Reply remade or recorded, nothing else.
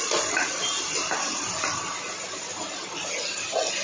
recorded